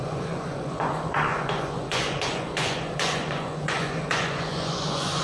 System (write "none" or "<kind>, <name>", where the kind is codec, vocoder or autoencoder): vocoder, Vocos